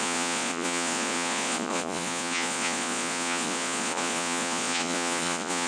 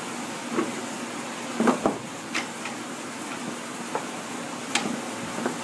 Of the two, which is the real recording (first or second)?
second